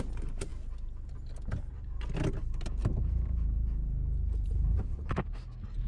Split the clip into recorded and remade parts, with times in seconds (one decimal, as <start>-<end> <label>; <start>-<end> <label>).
0.0-2.8 recorded; 2.8-5.1 remade; 5.1-5.9 recorded